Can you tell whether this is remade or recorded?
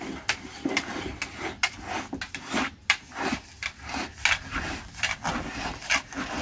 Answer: recorded